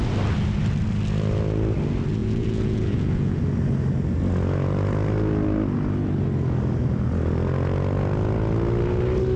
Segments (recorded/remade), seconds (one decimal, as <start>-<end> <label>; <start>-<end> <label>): 0.0-2.2 recorded; 2.2-3.4 remade; 3.4-9.4 recorded